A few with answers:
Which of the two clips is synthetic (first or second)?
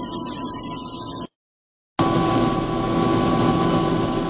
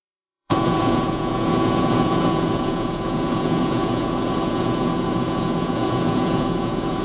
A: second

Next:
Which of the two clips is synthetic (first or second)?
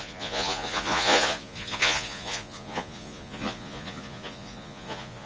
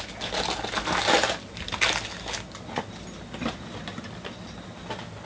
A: first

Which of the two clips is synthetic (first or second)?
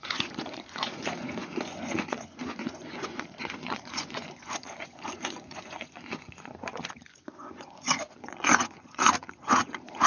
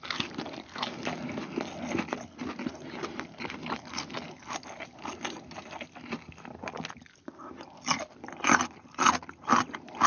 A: first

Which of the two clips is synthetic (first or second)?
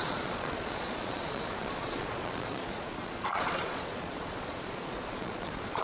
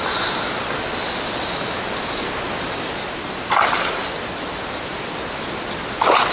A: first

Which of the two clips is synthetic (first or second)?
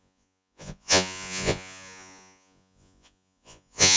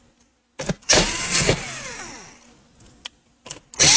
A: first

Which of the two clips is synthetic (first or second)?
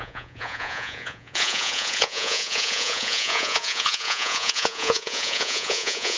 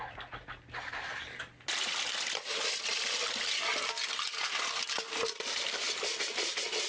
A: first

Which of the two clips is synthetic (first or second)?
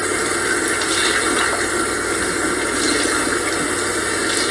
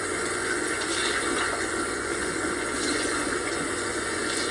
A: second